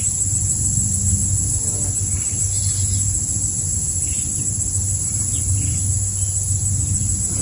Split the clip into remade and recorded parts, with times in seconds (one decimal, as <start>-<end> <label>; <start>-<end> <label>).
0.0-7.4 recorded